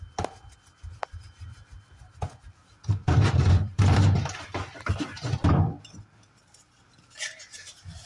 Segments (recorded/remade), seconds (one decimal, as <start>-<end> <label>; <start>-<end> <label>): 0.0-3.0 recorded; 3.0-8.1 remade